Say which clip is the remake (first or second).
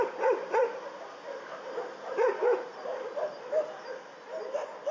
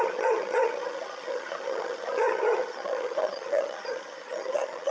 second